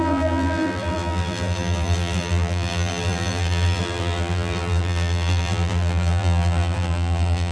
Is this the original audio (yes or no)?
no